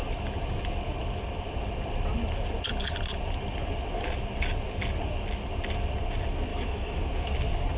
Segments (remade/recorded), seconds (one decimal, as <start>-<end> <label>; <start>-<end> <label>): 0.0-6.5 recorded; 6.5-7.0 remade; 7.0-7.8 recorded